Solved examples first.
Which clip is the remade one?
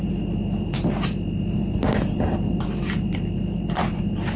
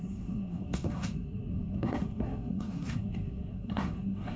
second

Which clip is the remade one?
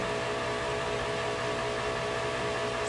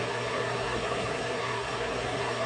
second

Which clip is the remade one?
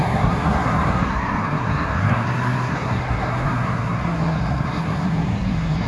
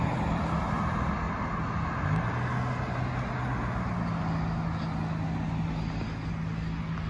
first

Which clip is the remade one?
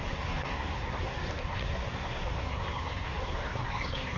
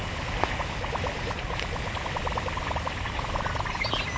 first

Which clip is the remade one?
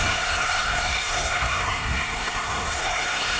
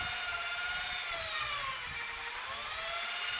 first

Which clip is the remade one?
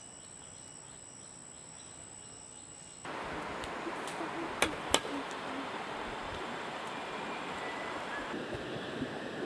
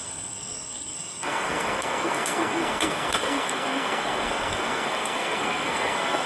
second